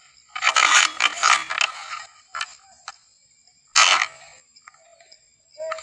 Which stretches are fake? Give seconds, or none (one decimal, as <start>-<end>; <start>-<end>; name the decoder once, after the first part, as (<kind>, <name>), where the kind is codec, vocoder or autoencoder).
none